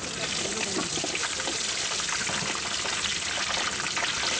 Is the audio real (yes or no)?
yes